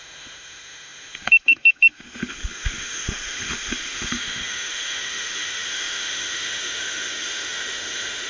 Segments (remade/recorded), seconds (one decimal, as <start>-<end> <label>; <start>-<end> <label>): 0.0-8.3 remade